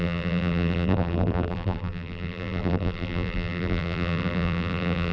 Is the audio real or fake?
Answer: fake